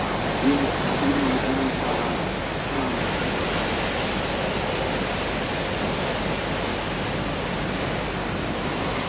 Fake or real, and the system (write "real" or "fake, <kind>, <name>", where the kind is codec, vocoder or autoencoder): real